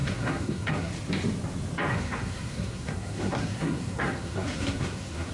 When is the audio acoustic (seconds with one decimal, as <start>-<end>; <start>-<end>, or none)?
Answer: 0.9-1.9